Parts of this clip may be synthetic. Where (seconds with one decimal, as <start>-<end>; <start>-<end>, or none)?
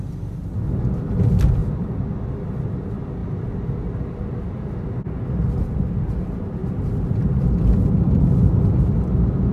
none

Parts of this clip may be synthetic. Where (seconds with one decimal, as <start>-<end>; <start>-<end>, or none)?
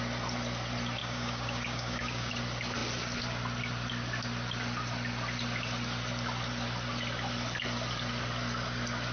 1.0-2.3